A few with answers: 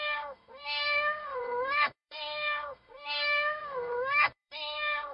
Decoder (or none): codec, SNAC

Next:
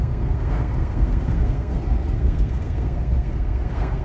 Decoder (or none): codec, SNAC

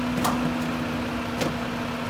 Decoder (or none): none